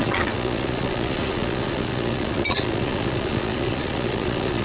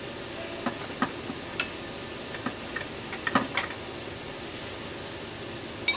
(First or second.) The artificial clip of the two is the first